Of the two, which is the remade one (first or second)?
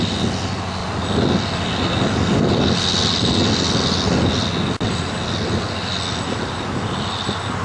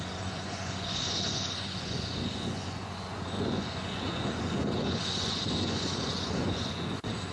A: second